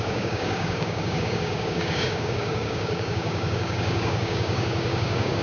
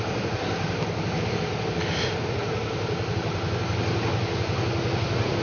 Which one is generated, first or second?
first